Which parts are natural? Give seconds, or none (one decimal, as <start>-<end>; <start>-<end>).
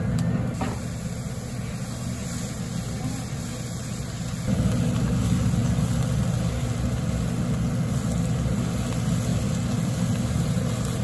0.0-11.0